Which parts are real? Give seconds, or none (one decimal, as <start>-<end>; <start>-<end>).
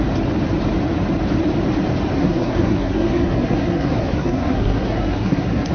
0.0-2.2